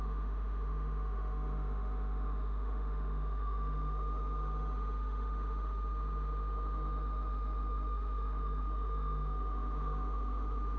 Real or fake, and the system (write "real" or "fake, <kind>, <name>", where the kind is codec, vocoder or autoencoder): fake, autoencoder, DAC-VAE